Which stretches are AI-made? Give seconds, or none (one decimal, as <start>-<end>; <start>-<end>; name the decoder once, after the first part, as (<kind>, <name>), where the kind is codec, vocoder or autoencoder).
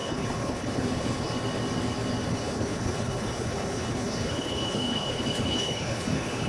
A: 0.0-1.3 (codec, HILCodec); 2.3-6.5